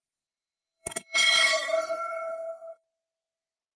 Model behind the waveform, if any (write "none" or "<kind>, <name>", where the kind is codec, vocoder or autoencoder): codec, SNAC